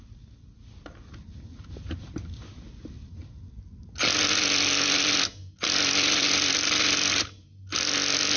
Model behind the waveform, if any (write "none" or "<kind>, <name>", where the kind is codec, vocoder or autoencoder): none